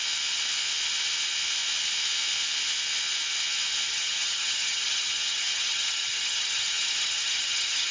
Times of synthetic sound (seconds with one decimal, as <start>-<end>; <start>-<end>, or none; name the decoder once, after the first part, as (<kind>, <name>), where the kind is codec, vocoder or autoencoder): 3.9-7.9 (vocoder, HiFi-GAN)